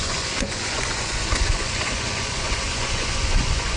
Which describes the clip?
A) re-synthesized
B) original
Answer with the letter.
A